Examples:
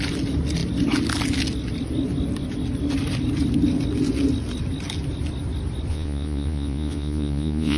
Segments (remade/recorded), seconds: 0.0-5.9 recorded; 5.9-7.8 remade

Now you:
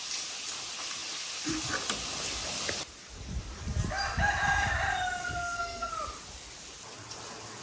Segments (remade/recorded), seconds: 0.0-5.2 recorded; 5.2-5.9 remade; 5.9-7.6 recorded